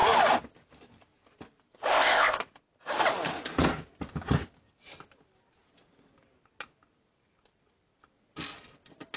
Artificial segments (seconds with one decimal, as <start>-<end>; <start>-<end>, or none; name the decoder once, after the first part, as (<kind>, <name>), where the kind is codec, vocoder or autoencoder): 1.9-2.4 (codec, ZipCodec)